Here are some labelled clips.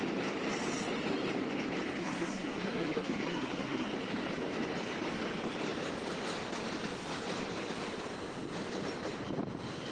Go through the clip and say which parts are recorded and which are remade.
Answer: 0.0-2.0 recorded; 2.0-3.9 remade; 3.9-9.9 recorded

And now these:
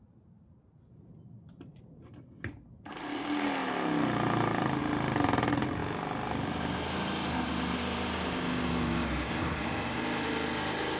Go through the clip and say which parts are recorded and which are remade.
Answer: 0.0-11.0 recorded

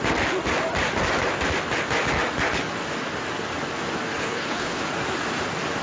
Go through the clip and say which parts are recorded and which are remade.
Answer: 0.0-4.2 recorded; 4.2-4.8 remade; 4.8-5.8 recorded

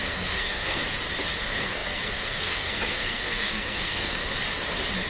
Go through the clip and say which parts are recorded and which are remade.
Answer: 0.0-0.8 remade; 0.8-1.4 recorded; 1.4-4.3 remade; 4.3-5.1 recorded

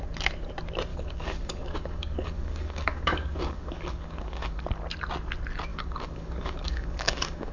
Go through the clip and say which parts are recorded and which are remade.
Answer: 0.0-0.9 recorded; 0.9-4.6 remade; 4.6-5.7 recorded; 5.7-7.5 remade

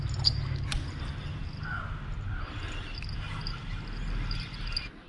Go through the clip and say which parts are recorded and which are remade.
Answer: 0.0-5.1 recorded